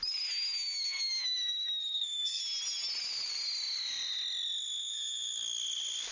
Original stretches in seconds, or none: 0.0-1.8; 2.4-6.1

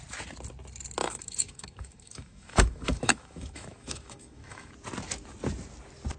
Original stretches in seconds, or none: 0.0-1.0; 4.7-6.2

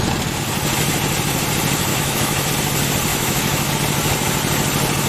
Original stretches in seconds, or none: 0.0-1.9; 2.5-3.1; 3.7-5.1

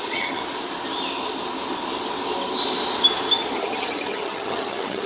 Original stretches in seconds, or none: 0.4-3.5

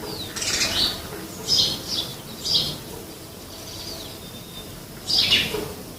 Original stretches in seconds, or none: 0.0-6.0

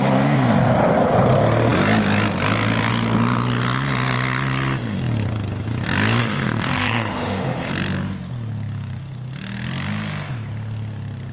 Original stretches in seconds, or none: 0.0-6.2; 7.7-11.3

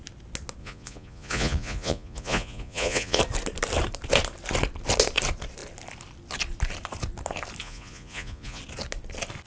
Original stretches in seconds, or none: 0.0-0.6; 3.2-7.6; 8.6-9.5

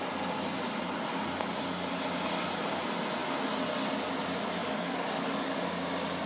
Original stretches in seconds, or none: 0.0-4.6; 5.6-6.3